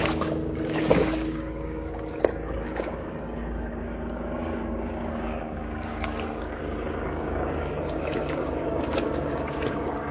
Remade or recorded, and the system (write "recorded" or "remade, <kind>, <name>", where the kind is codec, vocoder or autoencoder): remade, codec, DAC